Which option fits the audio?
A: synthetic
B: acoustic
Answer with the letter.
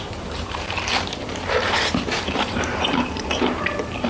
A